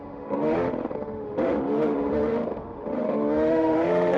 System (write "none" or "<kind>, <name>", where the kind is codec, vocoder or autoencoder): autoencoder, DAC-VAE